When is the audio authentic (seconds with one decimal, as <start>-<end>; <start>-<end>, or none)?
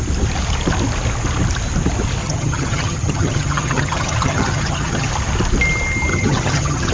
0.0-2.2; 5.1-6.1